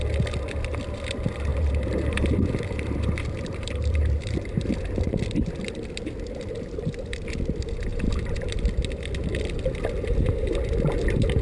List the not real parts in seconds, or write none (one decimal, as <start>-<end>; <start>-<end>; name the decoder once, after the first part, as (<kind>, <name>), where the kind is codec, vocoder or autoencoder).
1.5-4.7 (vocoder, BigVGAN v2); 7.9-8.6